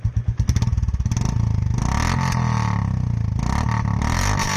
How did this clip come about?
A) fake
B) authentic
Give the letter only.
B